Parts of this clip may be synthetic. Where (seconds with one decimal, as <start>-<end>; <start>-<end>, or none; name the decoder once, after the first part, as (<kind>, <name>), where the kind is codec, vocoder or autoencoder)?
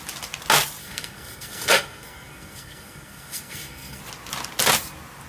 0.8-4.0 (codec, SNAC)